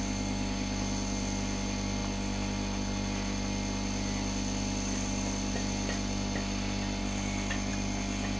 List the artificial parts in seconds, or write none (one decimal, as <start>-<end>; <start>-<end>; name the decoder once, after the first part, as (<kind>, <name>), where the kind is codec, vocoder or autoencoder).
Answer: none